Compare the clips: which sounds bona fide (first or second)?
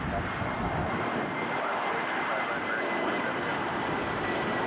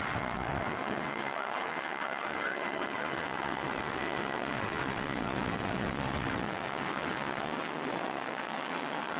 first